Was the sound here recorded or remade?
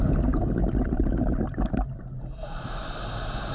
recorded